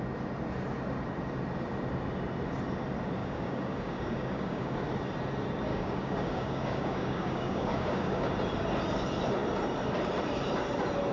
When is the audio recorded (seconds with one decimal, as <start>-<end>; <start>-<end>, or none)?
0.0-3.2; 4.8-5.7; 8.3-11.1